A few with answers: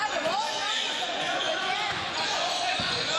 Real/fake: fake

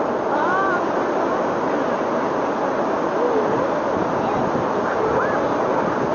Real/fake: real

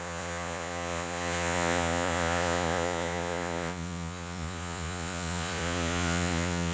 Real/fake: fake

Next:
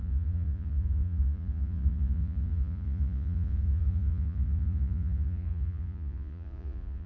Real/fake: fake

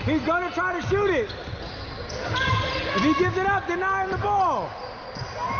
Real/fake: real